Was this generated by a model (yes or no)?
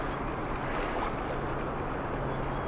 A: no